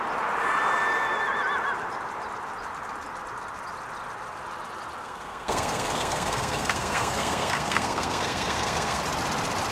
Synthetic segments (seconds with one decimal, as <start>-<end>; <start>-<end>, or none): 5.0-9.0